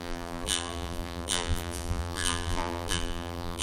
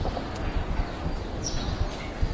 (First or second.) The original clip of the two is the second